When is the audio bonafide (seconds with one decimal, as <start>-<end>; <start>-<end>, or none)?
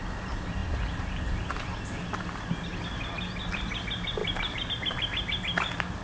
0.0-6.0